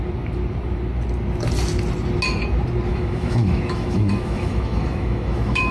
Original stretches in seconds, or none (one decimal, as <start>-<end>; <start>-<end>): 0.0-2.9